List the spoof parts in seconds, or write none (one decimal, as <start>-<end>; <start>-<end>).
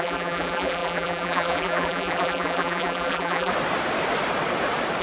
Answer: 0.0-3.5